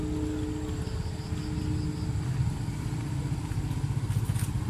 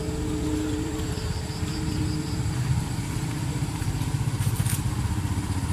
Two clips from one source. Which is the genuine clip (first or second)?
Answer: first